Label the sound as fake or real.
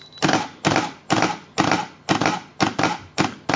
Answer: real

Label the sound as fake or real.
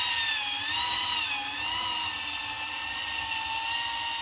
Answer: real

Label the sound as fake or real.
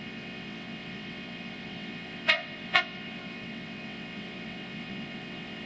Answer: fake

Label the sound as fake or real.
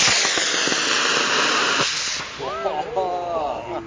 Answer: real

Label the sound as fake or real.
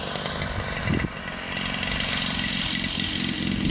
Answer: real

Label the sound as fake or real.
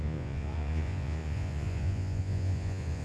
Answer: fake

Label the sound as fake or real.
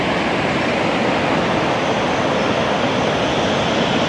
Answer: real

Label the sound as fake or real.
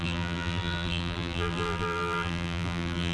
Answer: fake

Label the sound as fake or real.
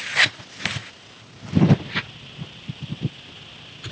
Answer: real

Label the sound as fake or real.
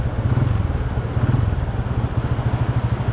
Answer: real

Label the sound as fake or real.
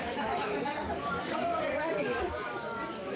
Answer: fake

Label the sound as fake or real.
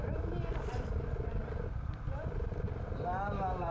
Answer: real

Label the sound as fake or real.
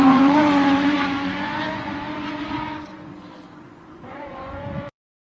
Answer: fake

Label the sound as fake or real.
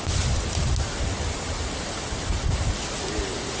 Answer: real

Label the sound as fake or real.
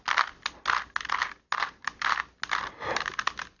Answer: real